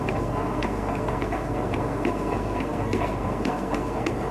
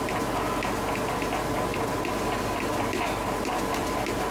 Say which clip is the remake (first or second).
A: first